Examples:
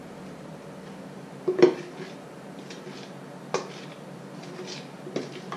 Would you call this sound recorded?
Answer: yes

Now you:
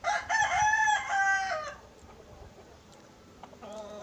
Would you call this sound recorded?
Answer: no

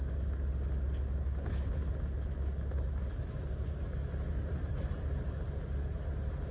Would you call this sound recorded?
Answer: yes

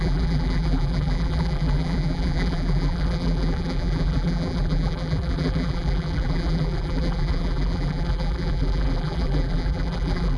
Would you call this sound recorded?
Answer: no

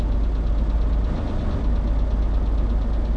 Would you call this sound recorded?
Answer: yes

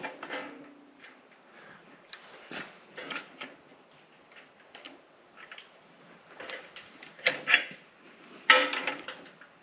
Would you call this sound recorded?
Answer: yes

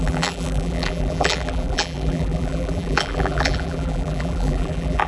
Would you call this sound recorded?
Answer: no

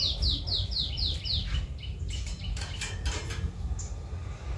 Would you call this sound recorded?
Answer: yes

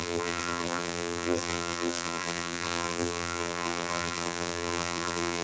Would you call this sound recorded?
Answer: no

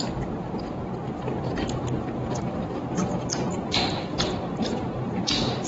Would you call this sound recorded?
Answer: yes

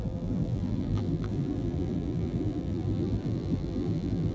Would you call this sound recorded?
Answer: no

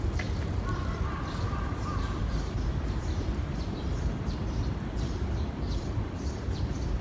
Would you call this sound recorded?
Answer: no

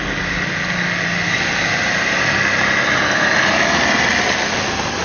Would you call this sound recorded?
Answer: yes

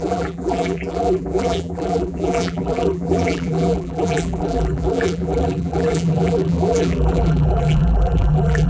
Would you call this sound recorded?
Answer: no